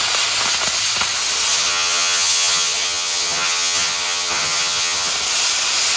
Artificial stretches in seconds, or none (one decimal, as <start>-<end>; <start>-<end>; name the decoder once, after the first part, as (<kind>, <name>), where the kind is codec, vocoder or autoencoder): 1.5-5.1 (vocoder, HiFi-GAN)